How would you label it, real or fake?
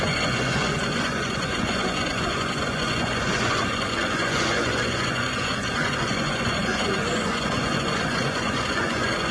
fake